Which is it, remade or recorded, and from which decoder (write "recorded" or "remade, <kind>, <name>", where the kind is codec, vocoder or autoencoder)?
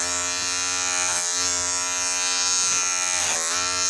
recorded